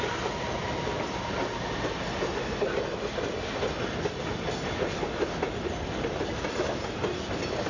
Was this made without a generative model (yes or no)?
yes